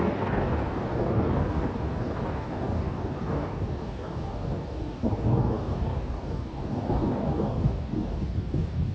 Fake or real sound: fake